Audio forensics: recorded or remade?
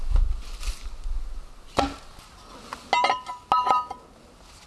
recorded